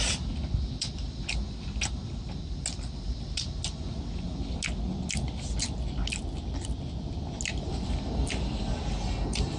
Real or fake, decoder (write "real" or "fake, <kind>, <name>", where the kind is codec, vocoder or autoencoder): real